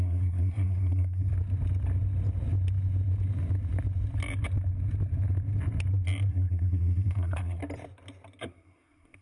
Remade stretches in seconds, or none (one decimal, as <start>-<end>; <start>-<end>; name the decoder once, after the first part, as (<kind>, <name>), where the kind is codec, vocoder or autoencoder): 0.0-1.3 (codec, SNAC); 6.3-7.6; 8.4-9.2